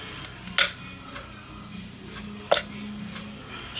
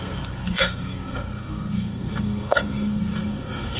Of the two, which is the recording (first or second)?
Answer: first